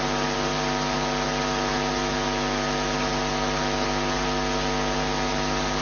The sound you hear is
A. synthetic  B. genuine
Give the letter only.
B